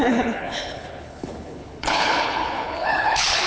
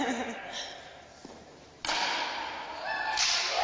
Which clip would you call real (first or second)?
second